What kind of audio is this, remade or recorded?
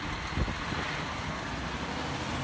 recorded